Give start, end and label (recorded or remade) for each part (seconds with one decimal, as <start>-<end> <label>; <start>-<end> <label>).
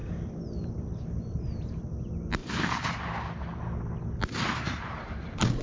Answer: 0.0-5.6 recorded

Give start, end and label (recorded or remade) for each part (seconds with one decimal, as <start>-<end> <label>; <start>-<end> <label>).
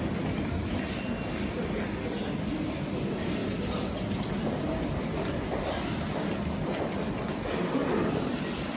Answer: 0.0-8.8 recorded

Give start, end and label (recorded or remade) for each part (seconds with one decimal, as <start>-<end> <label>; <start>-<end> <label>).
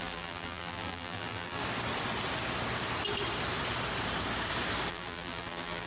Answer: 0.0-1.6 remade; 1.6-4.9 recorded; 4.9-5.9 remade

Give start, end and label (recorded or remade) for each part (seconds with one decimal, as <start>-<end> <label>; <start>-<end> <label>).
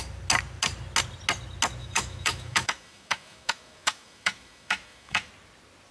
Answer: 0.0-1.8 recorded; 1.8-5.3 remade; 5.3-5.9 recorded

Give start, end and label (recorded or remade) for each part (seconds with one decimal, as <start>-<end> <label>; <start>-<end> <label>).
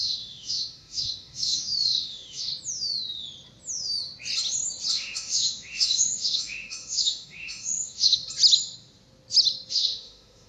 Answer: 0.0-2.5 remade; 2.5-4.9 recorded; 4.9-8.2 remade; 8.2-9.7 recorded; 9.7-10.5 remade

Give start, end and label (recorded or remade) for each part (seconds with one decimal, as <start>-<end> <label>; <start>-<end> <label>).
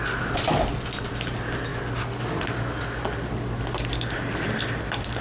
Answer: 0.0-5.2 recorded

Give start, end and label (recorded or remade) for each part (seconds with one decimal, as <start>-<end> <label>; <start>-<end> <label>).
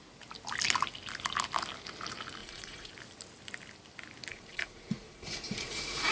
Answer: 0.0-2.4 recorded; 2.4-2.9 remade; 2.9-4.3 recorded; 4.3-6.1 remade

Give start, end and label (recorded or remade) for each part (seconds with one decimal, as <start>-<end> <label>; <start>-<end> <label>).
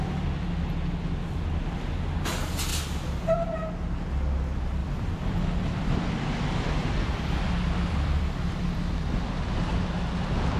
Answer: 0.0-4.8 recorded; 4.8-9.0 remade; 9.0-10.6 recorded